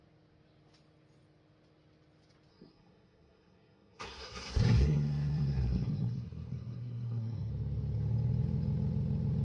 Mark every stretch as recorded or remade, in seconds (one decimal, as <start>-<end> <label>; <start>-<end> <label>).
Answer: 0.0-2.5 recorded; 2.5-7.5 remade; 7.5-9.4 recorded